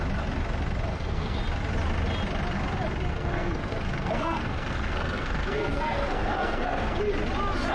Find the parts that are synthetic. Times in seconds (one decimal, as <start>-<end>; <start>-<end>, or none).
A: 0.9-1.4; 3.1-7.0